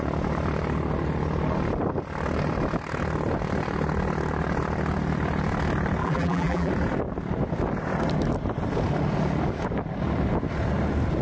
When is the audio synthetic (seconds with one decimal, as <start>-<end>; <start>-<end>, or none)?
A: 6.0-6.7